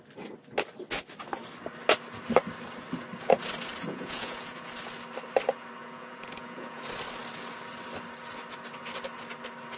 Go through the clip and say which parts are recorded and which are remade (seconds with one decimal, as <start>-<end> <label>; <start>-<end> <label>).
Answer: 0.0-3.9 recorded; 3.9-4.7 remade; 4.7-5.8 recorded; 5.8-6.8 remade; 6.8-9.8 recorded